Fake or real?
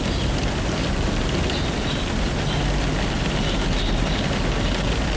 real